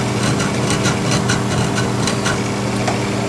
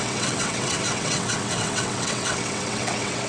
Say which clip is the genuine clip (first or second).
first